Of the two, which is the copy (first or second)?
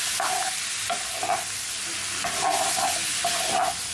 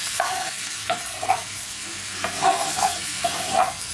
second